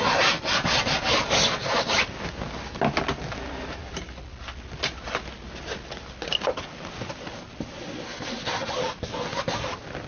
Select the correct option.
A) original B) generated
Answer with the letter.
A